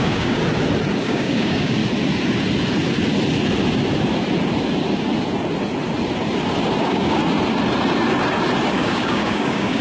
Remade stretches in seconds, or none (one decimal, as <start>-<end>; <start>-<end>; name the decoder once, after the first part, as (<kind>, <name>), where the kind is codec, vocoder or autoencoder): 0.0-0.4 (codec, DAC); 1.0-1.8; 6.8-7.2; 8.7-9.8